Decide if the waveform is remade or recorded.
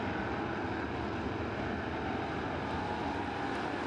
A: recorded